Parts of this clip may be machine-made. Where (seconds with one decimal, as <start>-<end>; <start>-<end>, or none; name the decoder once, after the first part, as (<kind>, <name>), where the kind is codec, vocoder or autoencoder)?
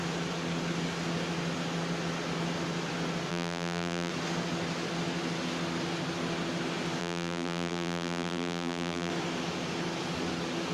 3.3-4.1 (vocoder, BigVGAN v2); 7.0-9.1